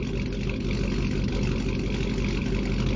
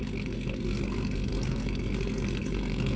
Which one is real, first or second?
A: first